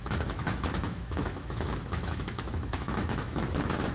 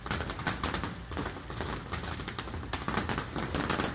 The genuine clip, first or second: second